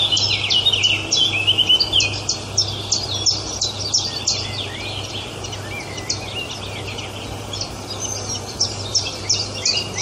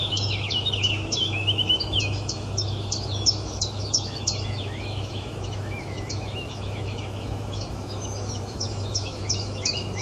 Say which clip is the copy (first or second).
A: second